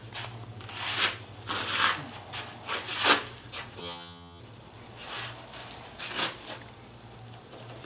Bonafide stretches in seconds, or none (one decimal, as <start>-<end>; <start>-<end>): 0.0-3.8; 4.4-7.8

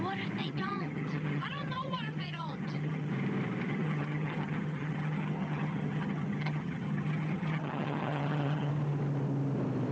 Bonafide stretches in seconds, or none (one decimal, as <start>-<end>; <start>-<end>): 0.0-0.4; 3.1-3.7; 8.7-9.9

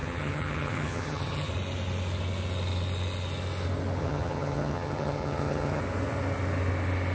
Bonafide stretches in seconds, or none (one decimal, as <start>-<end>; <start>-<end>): 1.5-4.0; 5.8-7.1

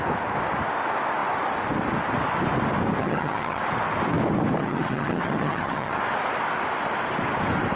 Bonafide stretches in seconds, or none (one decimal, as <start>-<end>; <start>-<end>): 0.0-3.0; 3.6-4.6; 6.0-7.8